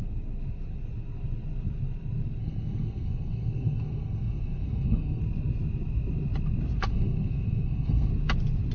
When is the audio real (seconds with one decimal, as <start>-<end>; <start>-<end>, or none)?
0.0-2.4; 5.2-6.9; 8.1-8.7